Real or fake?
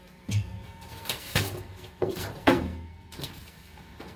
fake